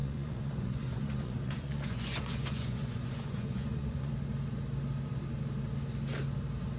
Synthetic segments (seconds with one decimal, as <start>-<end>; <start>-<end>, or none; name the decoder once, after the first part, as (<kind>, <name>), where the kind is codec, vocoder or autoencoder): 0.0-4.1 (vocoder, Vocos)